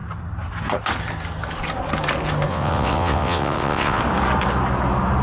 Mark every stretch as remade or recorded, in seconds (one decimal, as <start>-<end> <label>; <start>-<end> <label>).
0.0-2.5 recorded; 2.5-4.0 remade; 4.0-5.2 recorded